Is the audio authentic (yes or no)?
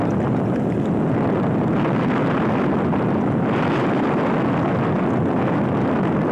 yes